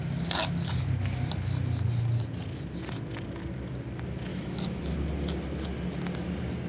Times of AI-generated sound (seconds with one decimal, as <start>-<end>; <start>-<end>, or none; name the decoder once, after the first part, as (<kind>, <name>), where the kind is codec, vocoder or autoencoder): 4.3-4.8 (autoencoder, DAC-VAE)